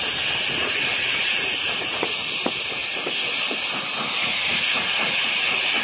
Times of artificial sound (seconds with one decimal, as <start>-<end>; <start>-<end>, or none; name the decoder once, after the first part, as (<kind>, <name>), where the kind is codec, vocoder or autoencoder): 0.6-2.3 (vocoder, Vocos); 4.2-5.8